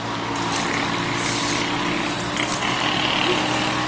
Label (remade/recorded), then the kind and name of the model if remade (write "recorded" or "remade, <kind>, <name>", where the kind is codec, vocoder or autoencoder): recorded